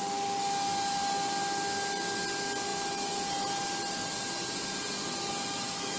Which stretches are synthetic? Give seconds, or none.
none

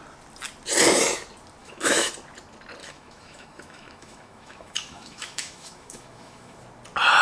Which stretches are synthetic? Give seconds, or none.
1.6-2.1 (autoencoder, DAC-VAE); 2.8-6.6

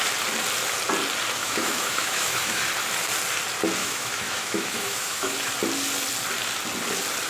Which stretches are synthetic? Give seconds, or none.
1.4-2.6 (autoencoder, DAC-VAE); 3.8-5.5